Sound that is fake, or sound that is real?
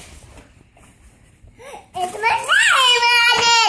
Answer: real